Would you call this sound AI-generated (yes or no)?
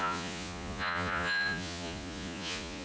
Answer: yes